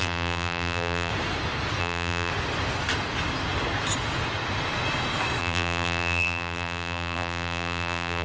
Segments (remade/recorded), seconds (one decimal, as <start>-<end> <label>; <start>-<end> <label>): 0.0-1.1 remade; 1.1-1.8 recorded; 1.8-2.3 remade; 2.3-5.4 recorded; 5.4-8.2 remade

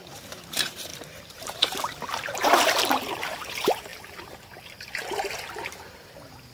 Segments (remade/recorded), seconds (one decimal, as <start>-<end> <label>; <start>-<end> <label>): 0.0-6.5 remade

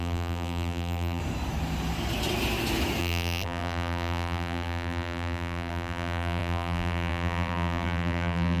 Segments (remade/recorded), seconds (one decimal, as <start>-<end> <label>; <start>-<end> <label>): 0.0-1.2 remade; 1.2-3.0 recorded; 3.0-8.6 remade

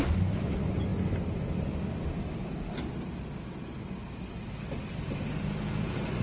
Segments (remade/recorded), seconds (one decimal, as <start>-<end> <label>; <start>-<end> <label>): 0.0-6.2 recorded

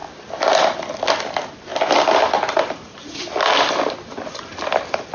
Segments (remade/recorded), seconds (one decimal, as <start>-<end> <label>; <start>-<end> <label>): 0.0-1.2 remade; 1.2-1.7 recorded; 1.7-5.1 remade